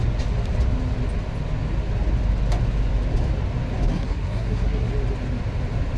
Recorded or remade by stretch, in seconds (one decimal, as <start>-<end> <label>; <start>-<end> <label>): 0.0-3.9 recorded; 3.9-4.9 remade; 4.9-6.0 recorded